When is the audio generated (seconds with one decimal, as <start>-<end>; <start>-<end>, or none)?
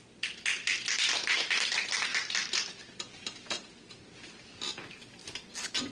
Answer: 2.1-2.7